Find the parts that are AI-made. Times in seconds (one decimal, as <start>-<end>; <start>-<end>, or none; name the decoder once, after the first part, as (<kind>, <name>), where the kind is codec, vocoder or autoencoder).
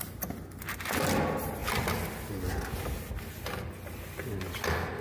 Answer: none